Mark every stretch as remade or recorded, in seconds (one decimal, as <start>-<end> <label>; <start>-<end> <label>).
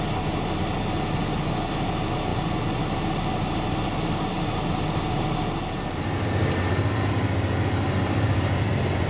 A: 0.0-9.1 recorded